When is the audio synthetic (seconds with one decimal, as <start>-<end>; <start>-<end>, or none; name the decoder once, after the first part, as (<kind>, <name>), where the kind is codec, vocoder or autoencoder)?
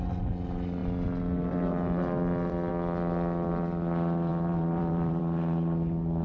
4.3-5.2 (vocoder, BigVGAN v2)